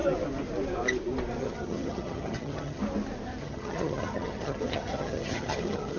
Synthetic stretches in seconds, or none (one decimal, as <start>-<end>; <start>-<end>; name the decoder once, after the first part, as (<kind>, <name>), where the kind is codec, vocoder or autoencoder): 1.4-2.8 (vocoder, HiFi-GAN); 3.4-6.0